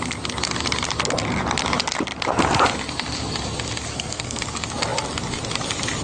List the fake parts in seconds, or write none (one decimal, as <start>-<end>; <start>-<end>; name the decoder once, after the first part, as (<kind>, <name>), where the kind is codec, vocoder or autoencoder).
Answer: 3.9-4.4 (codec, SNAC)